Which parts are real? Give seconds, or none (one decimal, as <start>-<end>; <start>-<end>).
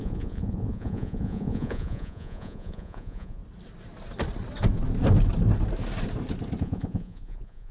3.4-6.6